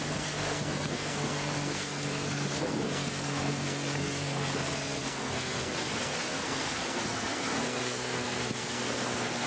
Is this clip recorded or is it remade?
remade